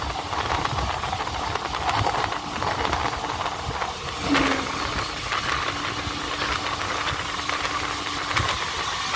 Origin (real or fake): real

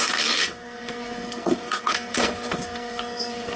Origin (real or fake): fake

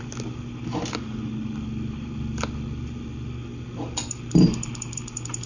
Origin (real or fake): real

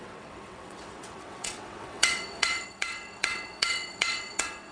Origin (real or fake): fake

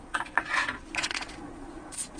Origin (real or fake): fake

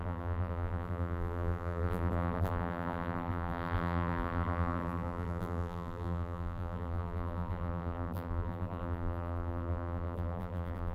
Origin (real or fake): fake